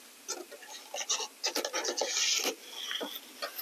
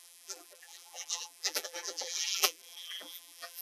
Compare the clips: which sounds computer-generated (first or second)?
second